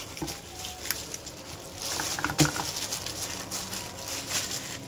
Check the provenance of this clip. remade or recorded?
recorded